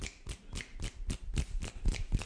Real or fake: real